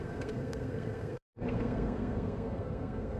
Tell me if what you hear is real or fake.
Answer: fake